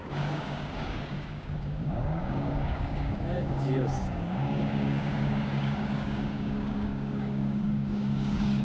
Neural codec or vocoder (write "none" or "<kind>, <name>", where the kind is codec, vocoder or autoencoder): codec, DAC